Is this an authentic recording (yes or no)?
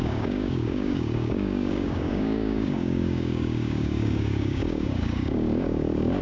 no